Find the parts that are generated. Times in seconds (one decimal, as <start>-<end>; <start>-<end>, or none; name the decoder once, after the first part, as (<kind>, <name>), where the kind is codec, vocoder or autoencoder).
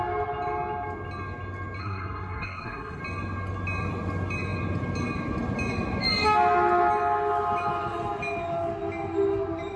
1.8-3.0 (codec, SNAC)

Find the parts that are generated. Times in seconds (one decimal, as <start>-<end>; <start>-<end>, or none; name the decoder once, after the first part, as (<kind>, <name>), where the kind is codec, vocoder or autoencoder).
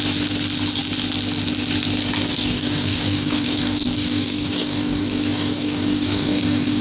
2.3-6.8 (codec, DAC)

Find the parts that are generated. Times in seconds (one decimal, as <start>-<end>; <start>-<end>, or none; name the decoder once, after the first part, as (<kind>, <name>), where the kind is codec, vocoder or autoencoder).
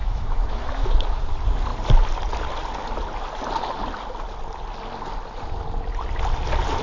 0.0-1.2 (autoencoder, DAC-VAE)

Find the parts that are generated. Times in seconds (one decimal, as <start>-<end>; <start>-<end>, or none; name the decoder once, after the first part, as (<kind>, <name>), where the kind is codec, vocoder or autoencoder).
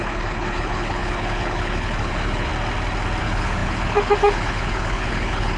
0.0-2.5 (codec, HILCodec); 3.2-5.6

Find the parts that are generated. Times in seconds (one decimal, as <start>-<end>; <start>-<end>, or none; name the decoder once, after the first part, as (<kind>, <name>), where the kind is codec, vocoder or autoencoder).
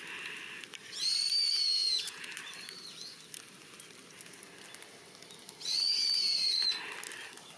1.8-2.3 (vocoder, Vocos)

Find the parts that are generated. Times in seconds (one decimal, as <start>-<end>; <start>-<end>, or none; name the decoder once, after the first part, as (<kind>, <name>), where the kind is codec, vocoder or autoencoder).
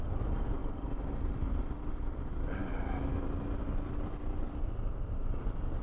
none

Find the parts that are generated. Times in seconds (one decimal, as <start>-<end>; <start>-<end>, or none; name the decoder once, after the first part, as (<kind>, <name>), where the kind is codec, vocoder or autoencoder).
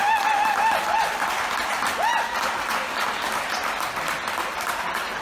none